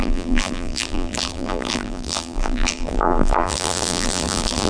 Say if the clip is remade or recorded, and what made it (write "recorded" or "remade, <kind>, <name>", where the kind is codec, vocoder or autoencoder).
remade, vocoder, BigVGAN v2